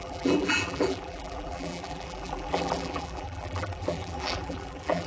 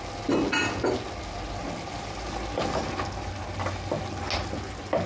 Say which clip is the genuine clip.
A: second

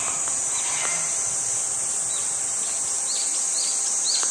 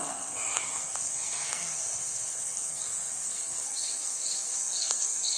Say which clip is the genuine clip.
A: first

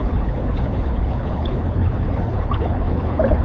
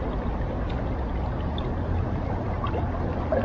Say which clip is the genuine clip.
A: second